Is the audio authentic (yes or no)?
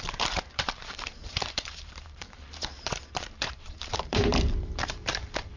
no